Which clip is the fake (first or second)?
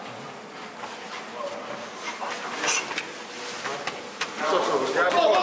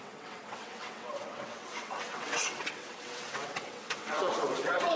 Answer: second